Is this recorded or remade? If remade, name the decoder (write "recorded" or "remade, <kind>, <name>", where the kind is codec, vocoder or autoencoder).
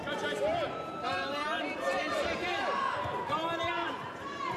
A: remade, vocoder, BigVGAN v2